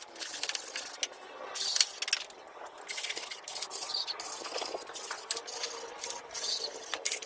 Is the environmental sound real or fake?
real